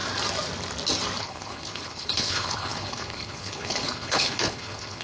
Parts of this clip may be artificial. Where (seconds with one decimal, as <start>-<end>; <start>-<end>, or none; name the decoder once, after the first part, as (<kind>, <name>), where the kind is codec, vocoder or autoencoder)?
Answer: 1.2-5.0 (codec, HILCodec)